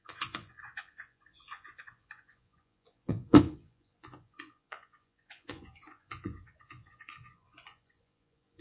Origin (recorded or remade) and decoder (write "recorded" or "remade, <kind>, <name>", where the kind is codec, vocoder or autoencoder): remade, vocoder, Vocos